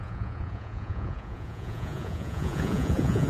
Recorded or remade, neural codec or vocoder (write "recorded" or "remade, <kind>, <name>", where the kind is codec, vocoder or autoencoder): remade, vocoder, Vocos